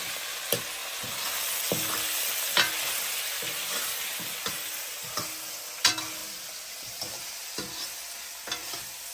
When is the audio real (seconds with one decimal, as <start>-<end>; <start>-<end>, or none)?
0.0-9.1